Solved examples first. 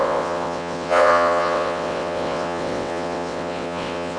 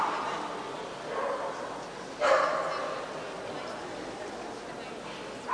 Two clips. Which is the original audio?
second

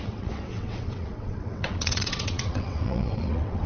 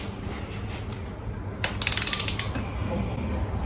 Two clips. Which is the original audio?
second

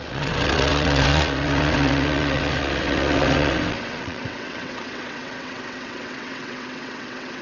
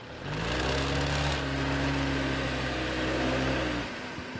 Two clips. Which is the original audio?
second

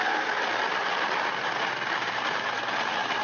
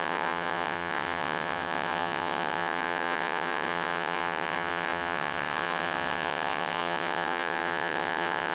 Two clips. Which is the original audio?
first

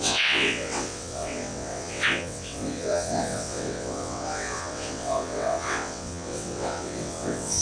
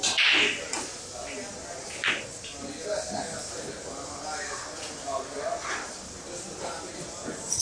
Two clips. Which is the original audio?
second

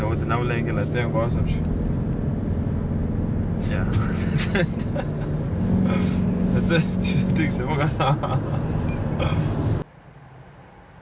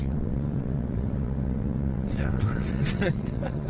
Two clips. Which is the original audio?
first